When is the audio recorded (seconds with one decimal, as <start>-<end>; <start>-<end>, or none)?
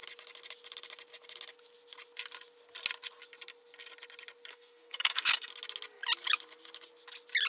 0.0-4.5; 5.5-7.5